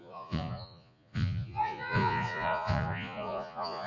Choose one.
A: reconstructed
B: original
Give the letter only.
A